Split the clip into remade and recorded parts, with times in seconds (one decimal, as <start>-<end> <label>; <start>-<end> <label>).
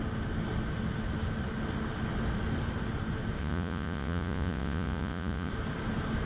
0.0-3.4 recorded; 3.4-5.5 remade; 5.5-6.3 recorded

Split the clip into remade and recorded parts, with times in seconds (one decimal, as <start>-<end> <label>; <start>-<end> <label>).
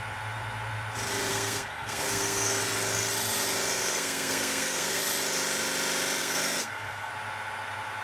0.0-1.3 recorded; 1.3-2.6 remade; 2.6-3.7 recorded; 3.7-5.0 remade; 5.0-6.2 recorded; 6.2-7.1 remade; 7.1-8.0 recorded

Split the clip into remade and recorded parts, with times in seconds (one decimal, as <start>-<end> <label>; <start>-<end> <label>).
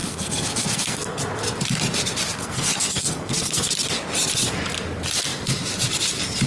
0.0-1.2 remade; 1.2-2.4 recorded; 2.4-3.7 remade; 3.7-6.5 recorded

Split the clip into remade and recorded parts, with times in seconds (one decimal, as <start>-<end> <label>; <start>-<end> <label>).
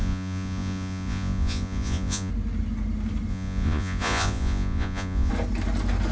0.0-2.3 remade; 2.3-3.3 recorded; 3.3-5.3 remade; 5.3-6.1 recorded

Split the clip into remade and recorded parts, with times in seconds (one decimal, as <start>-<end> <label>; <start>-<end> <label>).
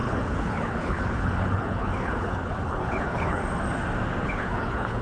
0.0-3.4 remade; 3.4-4.2 recorded; 4.2-5.0 remade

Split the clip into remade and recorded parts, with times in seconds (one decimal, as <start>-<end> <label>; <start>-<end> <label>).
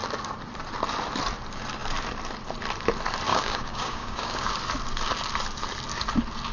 0.0-3.3 recorded; 3.3-4.5 remade; 4.5-6.5 recorded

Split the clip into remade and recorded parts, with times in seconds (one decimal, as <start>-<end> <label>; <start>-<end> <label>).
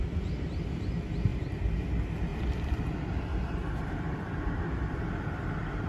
0.0-2.3 recorded; 2.3-2.8 remade; 2.8-3.3 recorded; 3.3-5.5 remade; 5.5-5.9 recorded